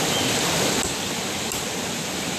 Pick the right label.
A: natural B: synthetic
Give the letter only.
A